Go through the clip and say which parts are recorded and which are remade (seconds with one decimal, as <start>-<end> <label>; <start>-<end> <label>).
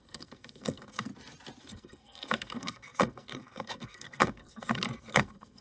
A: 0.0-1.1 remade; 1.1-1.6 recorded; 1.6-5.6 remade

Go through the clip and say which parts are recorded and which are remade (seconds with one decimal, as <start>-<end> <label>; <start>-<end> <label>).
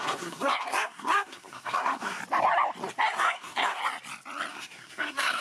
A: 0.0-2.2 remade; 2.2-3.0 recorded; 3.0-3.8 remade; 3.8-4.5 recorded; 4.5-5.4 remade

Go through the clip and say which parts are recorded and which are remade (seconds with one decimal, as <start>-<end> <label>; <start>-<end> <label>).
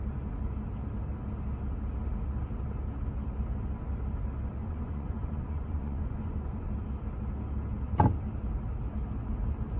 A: 0.0-4.6 recorded; 4.6-6.7 remade; 6.7-9.8 recorded